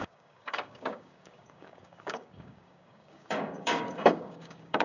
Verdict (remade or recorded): remade